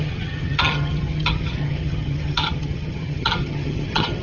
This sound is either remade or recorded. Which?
remade